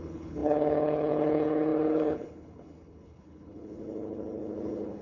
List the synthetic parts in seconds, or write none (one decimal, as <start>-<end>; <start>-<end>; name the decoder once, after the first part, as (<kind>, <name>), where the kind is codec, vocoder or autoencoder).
0.0-5.0 (codec, HILCodec)